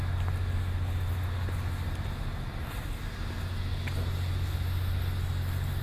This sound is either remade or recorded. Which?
recorded